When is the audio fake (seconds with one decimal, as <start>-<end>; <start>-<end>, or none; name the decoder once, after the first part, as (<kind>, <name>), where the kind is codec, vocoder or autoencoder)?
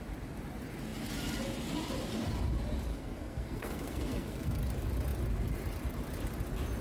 2.9-4.6 (codec, SNAC)